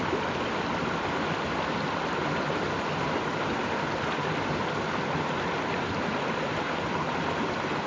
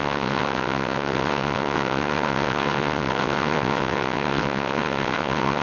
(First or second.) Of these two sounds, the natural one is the first